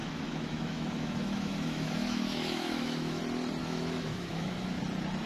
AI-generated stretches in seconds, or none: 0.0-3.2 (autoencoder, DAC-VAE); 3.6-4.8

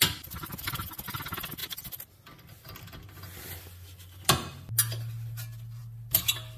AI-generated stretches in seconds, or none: none

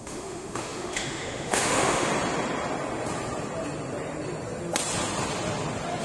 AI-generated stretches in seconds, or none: 0.0-2.1 (autoencoder, DAC-VAE)

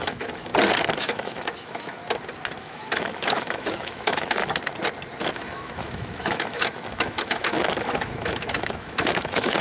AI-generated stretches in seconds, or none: 0.0-0.5 (autoencoder, DAC-VAE); 1.0-2.0; 2.6-4.4; 5.3-9.6

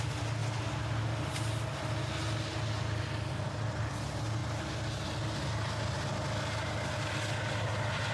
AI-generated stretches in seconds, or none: none

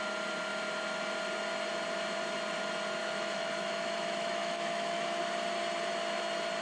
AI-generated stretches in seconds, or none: 3.0-5.2 (autoencoder, DAC-VAE)